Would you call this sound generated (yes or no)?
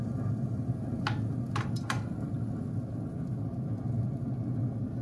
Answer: no